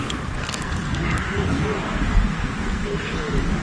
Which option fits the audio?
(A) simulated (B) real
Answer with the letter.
A